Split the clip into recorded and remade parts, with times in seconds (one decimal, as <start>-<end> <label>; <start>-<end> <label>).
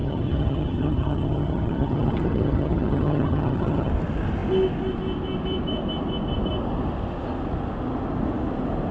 0.0-3.9 remade; 3.9-8.9 recorded